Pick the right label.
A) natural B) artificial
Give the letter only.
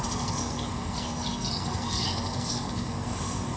B